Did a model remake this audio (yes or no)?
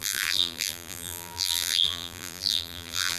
yes